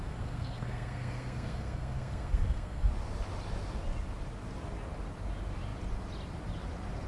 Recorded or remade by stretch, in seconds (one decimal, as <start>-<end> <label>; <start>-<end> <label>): 0.0-2.9 remade; 2.9-7.1 recorded